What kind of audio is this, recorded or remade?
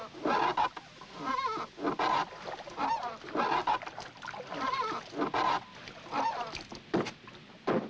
recorded